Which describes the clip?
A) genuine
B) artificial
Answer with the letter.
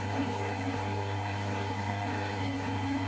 B